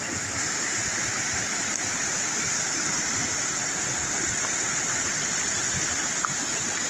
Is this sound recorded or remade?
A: recorded